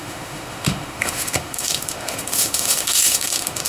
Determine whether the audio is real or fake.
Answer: fake